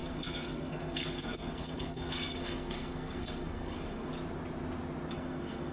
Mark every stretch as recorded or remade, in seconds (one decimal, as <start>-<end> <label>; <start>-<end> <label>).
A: 0.0-4.1 remade; 4.1-5.1 recorded; 5.1-5.7 remade